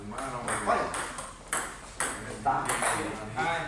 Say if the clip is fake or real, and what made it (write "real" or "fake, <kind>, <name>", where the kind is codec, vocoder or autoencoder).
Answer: real